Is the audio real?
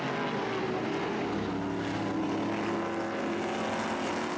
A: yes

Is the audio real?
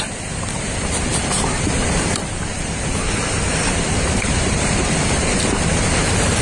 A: no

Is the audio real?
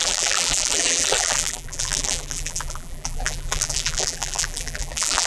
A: no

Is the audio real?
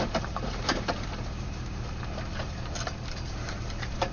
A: no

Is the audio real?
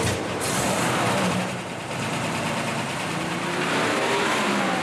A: no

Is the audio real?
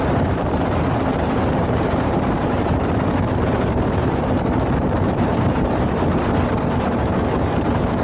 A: no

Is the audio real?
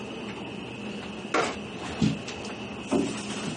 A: yes